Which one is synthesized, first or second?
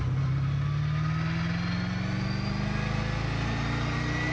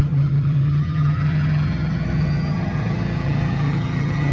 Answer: second